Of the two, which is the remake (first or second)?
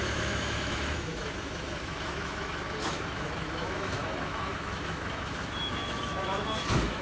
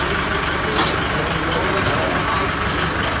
first